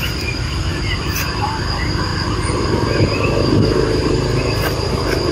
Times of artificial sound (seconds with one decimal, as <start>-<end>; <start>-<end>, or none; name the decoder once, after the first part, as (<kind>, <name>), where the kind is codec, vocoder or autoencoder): none